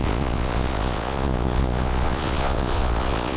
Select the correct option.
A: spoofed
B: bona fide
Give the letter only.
A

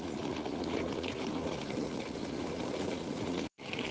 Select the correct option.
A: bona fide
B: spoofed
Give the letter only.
B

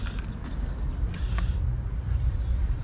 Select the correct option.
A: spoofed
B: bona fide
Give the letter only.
B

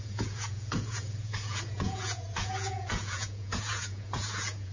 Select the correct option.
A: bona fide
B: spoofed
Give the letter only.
B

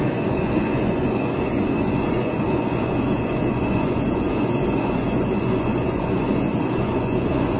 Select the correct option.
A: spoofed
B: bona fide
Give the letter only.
A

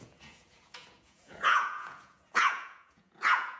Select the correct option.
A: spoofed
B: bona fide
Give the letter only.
A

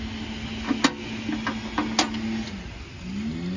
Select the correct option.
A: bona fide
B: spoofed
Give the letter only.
A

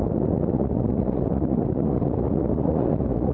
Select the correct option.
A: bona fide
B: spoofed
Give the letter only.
B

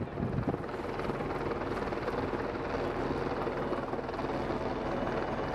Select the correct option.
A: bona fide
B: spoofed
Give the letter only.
A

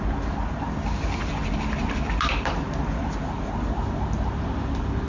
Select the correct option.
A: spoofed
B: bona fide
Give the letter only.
B